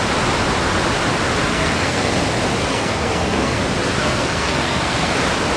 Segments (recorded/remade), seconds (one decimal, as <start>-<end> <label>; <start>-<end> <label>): 0.0-1.5 recorded; 1.5-2.1 remade; 2.1-2.6 recorded; 2.6-3.6 remade; 3.6-4.0 recorded; 4.0-5.1 remade; 5.1-5.6 recorded